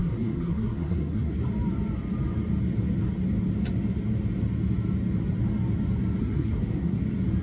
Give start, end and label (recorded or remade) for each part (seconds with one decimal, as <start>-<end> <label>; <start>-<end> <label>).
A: 0.0-1.3 remade; 1.3-6.2 recorded; 6.2-7.0 remade; 7.0-7.4 recorded